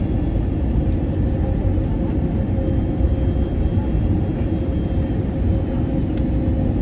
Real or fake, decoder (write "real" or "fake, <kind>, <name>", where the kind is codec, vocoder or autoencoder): real